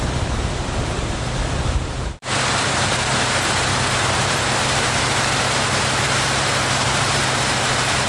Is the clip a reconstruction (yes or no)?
yes